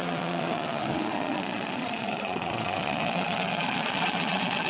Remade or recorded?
remade